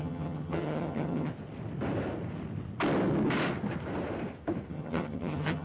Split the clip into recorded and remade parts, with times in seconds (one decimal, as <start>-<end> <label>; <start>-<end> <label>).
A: 0.0-1.3 remade; 1.3-4.7 recorded; 4.7-5.6 remade